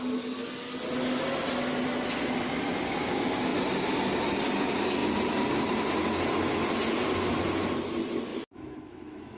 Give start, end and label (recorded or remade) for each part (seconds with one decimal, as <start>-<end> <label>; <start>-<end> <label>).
0.0-8.3 recorded; 8.3-9.4 remade